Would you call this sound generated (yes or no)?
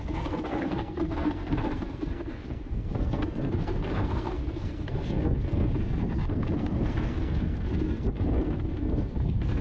yes